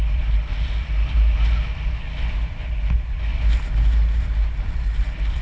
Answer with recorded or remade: recorded